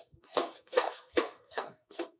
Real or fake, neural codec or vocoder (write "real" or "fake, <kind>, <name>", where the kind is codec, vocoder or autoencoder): fake, codec, SNAC